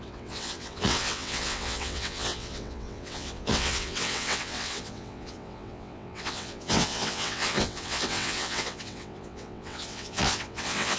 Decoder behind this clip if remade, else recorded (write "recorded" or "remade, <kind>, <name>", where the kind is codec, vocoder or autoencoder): remade, vocoder, WaveNeXt